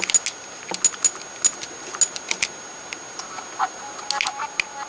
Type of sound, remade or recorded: recorded